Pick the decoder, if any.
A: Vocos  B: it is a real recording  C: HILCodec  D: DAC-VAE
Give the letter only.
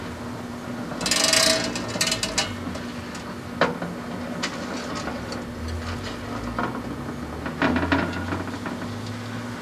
B